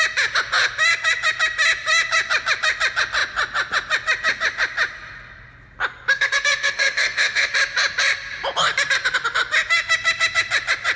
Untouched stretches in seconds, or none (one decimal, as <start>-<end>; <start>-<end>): 0.0-6.1; 7.5-11.0